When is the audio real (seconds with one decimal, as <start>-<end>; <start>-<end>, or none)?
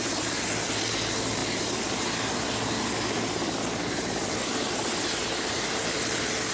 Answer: 0.0-6.5